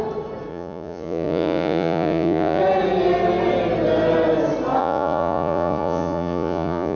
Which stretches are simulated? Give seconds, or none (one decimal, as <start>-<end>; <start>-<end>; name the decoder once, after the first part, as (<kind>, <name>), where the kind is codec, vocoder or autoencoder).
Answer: 0.5-2.6 (vocoder, Vocos); 4.8-7.0